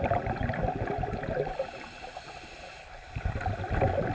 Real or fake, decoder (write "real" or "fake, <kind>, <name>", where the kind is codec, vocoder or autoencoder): real